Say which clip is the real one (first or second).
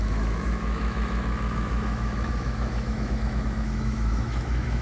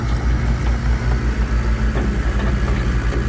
second